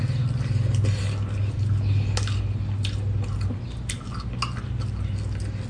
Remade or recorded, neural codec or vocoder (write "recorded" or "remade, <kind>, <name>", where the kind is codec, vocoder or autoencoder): recorded